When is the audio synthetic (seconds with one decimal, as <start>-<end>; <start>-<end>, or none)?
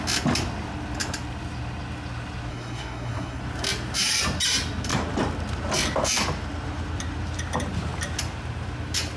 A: 2.5-3.4